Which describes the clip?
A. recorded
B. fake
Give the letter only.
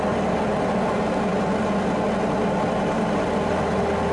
A